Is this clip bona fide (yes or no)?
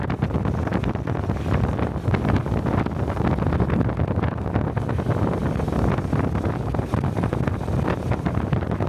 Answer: yes